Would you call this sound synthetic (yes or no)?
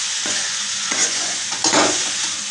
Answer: yes